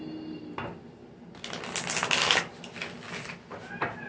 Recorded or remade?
recorded